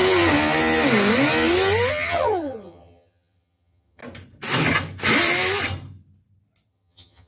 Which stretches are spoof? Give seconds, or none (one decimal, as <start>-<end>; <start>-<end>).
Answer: 1.9-4.0; 6.7-7.3